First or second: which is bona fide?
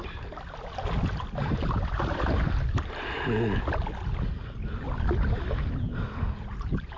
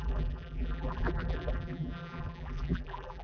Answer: first